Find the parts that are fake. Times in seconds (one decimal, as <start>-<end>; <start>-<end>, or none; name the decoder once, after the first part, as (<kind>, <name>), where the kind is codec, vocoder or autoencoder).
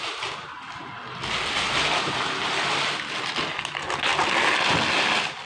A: none